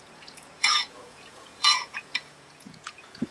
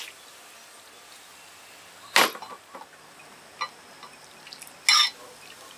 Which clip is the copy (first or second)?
first